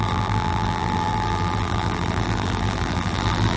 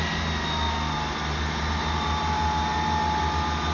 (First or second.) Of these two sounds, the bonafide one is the second